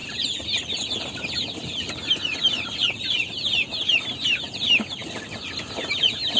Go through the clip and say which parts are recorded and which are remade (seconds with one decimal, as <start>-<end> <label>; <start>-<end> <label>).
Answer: 0.0-6.4 recorded